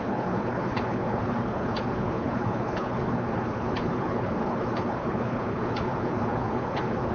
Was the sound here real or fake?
fake